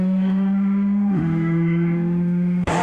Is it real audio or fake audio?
fake